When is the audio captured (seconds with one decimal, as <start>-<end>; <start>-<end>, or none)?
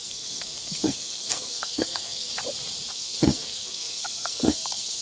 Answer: 2.3-2.9